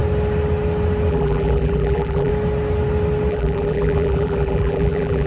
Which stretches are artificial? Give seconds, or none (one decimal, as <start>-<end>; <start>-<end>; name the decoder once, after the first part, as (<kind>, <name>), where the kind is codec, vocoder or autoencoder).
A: 1.1-2.3 (vocoder, BigVGAN v2); 3.3-5.3